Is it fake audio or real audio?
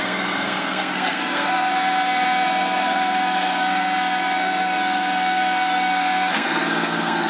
fake